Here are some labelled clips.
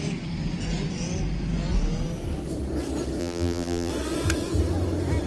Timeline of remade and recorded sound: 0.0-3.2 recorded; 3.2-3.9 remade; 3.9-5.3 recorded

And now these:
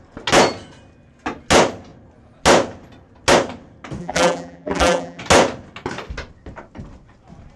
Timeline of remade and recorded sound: 0.0-4.0 recorded; 4.0-5.2 remade; 5.2-7.6 recorded

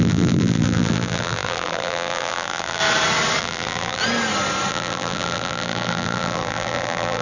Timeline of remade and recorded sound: 0.0-2.8 remade; 2.8-3.4 recorded; 3.4-4.0 remade; 4.0-4.7 recorded; 4.7-7.2 remade

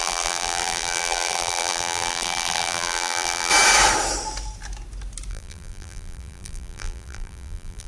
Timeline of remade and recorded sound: 0.0-3.5 remade; 3.5-5.3 recorded; 5.3-7.9 remade

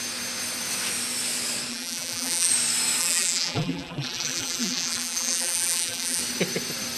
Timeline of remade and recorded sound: 0.0-1.7 recorded; 1.7-2.5 remade; 2.5-3.0 recorded; 3.0-6.2 remade; 6.2-7.0 recorded

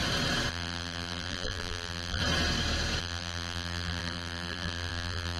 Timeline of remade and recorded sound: 0.0-0.5 recorded; 0.5-2.2 remade; 2.2-3.0 recorded; 3.0-5.4 remade

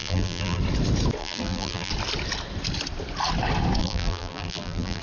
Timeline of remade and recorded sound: 0.0-0.6 remade; 0.6-1.2 recorded; 1.2-1.9 remade; 1.9-3.8 recorded; 3.8-5.0 remade

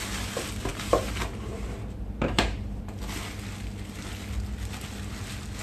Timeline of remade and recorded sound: 0.0-0.7 recorded; 0.7-3.0 remade; 3.0-5.6 recorded